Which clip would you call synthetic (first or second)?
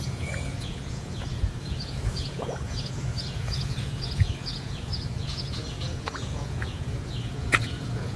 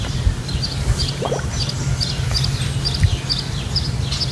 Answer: first